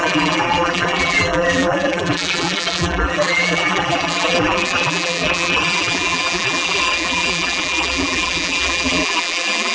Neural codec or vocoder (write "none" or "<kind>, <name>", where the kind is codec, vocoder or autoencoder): vocoder, BigVGAN v2